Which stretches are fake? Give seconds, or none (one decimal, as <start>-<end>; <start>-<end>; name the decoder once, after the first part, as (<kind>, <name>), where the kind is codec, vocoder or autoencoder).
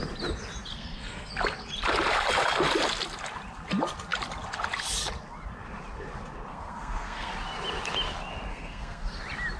0.7-1.3 (codec, SNAC); 6.5-7.3; 8.5-9.2